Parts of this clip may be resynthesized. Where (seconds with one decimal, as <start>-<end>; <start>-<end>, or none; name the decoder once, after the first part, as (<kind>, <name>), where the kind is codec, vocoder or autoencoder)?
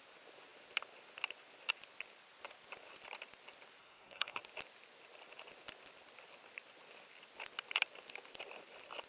3.8-4.4 (codec, SNAC)